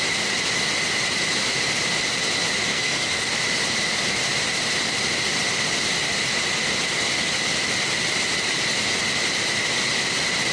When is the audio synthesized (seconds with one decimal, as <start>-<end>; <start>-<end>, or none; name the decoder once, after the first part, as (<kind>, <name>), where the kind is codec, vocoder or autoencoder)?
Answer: 2.7-3.3 (codec, SNAC)